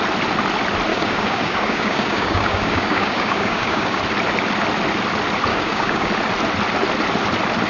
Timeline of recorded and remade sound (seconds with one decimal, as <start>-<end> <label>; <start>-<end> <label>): 0.0-0.9 recorded; 0.9-4.0 remade; 4.0-5.5 recorded; 5.5-6.1 remade; 6.1-7.7 recorded